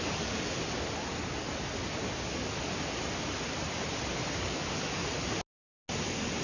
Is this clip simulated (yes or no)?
no